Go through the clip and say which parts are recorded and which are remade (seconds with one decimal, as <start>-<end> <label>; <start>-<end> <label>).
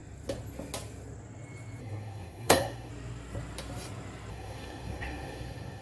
0.0-1.8 recorded; 1.8-2.9 remade; 2.9-4.3 recorded; 4.3-5.8 remade